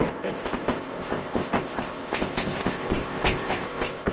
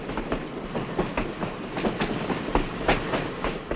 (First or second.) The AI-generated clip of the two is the first